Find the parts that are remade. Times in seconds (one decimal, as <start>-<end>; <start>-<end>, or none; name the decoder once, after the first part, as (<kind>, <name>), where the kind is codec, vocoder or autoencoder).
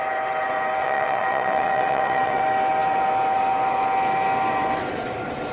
0.8-2.4 (vocoder, WaveNeXt)